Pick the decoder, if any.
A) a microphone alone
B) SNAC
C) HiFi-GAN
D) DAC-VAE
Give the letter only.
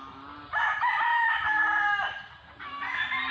A